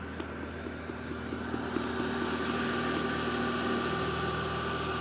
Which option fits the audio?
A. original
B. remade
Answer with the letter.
A